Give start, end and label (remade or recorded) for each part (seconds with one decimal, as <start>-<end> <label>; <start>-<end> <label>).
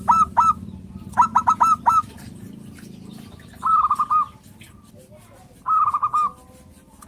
0.0-7.1 recorded